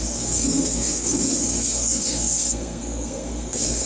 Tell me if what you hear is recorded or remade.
remade